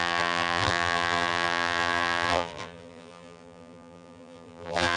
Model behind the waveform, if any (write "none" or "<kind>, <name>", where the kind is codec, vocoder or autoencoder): vocoder, BigVGAN v2